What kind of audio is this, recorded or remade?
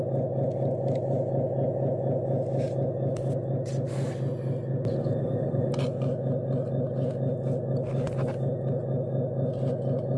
recorded